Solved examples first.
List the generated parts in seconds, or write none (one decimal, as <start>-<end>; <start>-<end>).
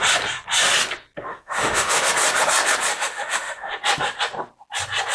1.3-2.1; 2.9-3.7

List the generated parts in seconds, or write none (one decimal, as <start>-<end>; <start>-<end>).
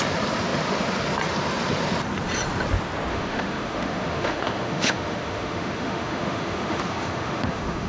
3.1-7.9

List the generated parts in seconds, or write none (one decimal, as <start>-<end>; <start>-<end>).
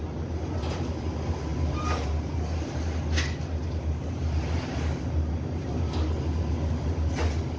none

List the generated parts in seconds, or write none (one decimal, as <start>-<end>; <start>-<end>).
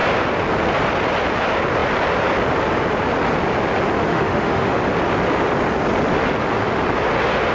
4.1-4.8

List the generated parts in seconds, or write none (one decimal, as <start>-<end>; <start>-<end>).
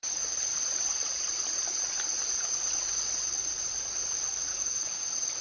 4.5-5.0